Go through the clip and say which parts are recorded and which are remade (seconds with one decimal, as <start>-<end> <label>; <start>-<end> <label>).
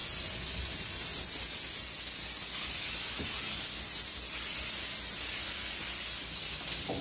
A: 0.0-7.0 recorded